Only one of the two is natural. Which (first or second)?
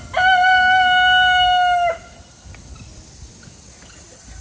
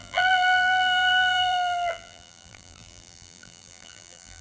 first